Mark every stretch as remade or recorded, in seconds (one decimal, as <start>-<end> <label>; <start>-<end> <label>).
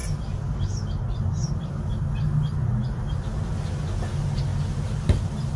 0.0-5.6 recorded